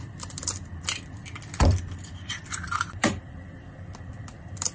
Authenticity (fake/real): fake